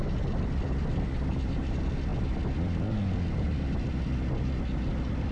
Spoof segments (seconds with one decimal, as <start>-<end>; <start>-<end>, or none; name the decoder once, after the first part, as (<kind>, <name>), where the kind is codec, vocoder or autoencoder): none